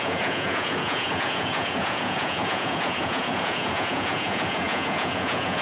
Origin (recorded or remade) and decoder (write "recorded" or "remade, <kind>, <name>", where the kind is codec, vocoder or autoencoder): remade, vocoder, Vocos